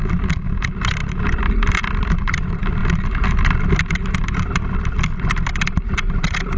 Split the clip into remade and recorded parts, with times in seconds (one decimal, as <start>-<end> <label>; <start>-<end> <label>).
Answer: 0.0-2.8 remade; 2.8-3.9 recorded; 3.9-6.6 remade